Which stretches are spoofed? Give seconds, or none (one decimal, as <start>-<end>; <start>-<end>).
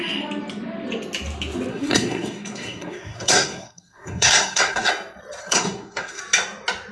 1.7-4.9; 5.4-6.2